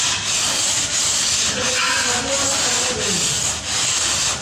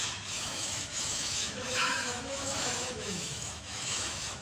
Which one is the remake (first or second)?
second